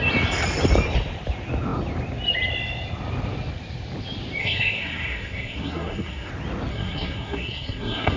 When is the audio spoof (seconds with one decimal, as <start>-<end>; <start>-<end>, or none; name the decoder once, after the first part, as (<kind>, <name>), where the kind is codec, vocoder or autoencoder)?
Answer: 4.4-6.3 (codec, SNAC); 6.7-8.2